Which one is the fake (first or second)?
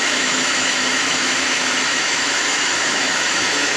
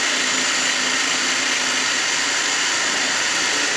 first